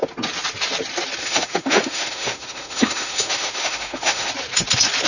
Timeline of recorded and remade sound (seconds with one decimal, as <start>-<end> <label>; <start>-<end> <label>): 0.0-1.2 recorded; 1.2-4.3 remade; 4.3-5.1 recorded